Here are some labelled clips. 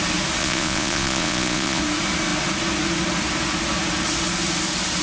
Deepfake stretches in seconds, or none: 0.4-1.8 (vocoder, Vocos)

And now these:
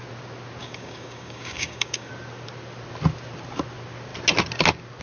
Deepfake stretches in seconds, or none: 0.6-2.1 (codec, DAC)

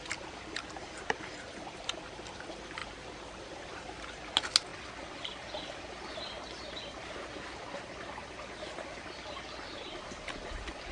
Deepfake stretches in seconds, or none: 2.8-3.8 (vocoder, BigVGAN v2)

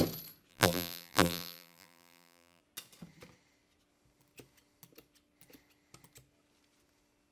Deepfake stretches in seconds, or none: 0.5-2.6 (vocoder, BigVGAN v2)

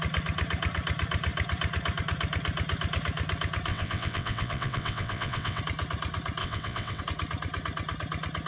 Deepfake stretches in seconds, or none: 3.7-5.6 (vocoder, WaveNeXt); 6.4-7.0

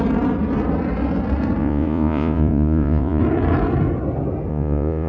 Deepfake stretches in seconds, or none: 1.6-3.2 (vocoder, Vocos); 4.5-5.1

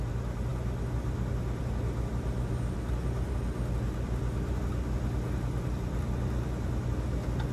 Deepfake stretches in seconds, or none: none

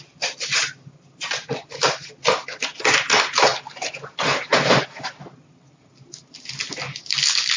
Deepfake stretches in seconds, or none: none